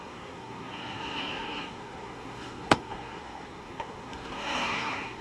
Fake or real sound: fake